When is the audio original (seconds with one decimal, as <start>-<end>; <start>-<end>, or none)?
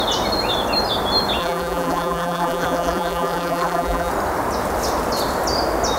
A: 0.0-1.4; 4.1-6.0